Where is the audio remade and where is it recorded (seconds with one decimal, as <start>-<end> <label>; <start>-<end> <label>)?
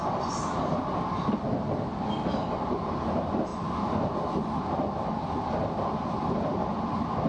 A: 0.0-3.5 recorded; 3.5-4.1 remade; 4.1-7.3 recorded